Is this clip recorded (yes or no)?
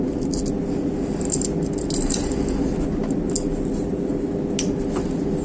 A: yes